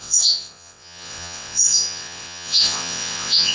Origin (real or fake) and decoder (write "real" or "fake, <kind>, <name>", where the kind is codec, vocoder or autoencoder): fake, vocoder, WaveNeXt